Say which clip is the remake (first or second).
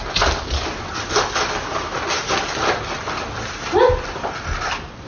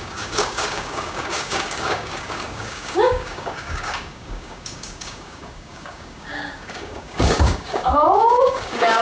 second